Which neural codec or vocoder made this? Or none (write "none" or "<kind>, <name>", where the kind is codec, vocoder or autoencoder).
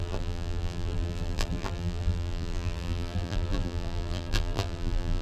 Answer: vocoder, BigVGAN v2